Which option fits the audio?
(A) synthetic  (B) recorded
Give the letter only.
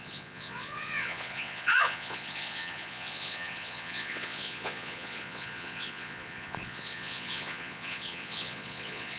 A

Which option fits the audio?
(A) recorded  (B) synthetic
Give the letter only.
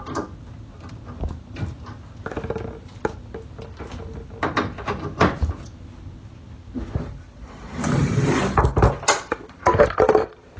A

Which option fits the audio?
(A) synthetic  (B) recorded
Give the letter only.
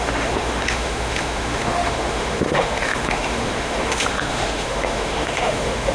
A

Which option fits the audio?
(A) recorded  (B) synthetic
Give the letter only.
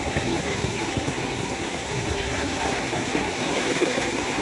B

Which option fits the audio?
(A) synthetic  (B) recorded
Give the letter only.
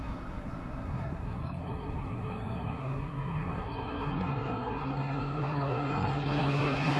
A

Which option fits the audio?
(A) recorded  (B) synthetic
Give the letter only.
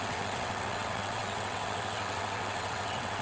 B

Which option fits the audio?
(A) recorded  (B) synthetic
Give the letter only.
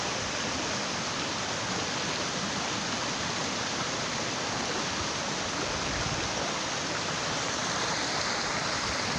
A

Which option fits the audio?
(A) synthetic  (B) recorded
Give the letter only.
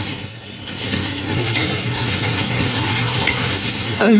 A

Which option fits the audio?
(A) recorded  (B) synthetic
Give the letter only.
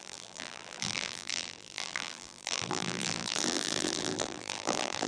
B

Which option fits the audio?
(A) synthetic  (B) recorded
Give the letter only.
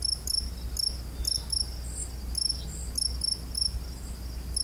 B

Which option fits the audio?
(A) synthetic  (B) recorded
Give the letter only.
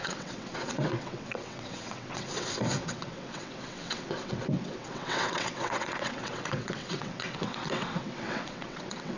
A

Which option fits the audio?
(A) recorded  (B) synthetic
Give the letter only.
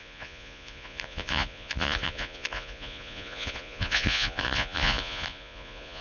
B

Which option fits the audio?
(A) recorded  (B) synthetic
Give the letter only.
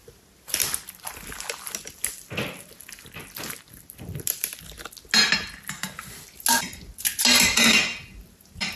A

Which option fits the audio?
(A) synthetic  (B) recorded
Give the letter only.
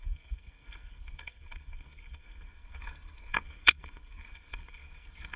A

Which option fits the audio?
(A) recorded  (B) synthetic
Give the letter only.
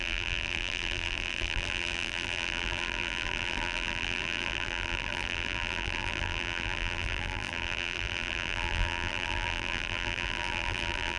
B